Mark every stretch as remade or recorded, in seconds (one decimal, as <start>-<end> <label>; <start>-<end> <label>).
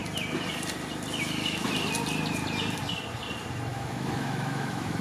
0.0-3.7 recorded; 3.7-5.0 remade